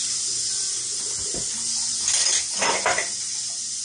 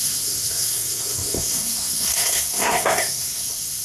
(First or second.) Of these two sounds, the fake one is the second